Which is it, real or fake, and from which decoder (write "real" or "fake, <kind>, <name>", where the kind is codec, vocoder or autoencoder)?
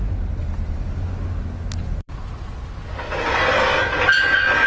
real